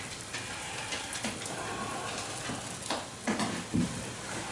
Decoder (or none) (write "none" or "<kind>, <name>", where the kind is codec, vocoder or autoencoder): none